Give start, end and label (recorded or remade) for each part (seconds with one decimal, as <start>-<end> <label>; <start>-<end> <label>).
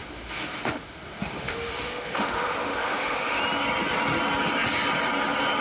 0.0-3.4 remade; 3.4-5.6 recorded